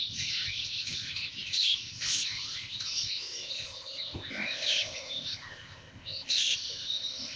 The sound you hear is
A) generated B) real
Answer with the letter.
A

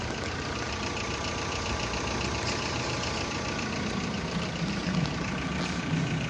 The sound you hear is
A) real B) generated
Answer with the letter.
A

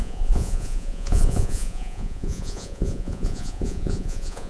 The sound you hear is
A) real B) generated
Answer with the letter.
B